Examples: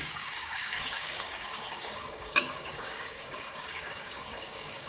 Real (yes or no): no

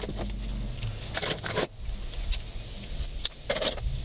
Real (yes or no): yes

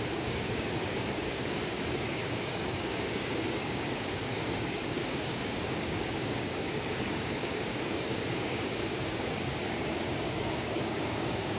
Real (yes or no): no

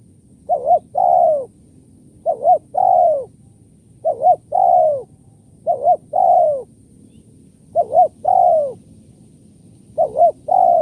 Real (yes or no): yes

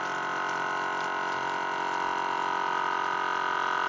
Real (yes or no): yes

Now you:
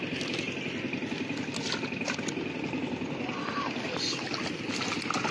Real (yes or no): yes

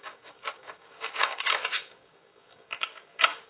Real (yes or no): no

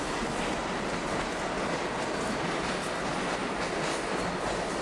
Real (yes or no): yes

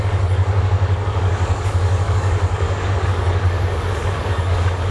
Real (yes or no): no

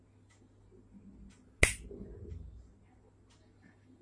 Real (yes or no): yes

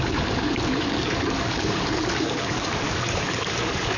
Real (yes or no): no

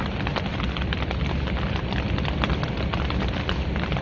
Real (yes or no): yes